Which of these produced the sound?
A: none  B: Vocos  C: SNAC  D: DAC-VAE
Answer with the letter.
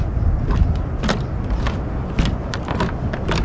A